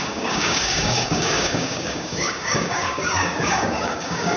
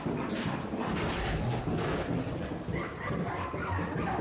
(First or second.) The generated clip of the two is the first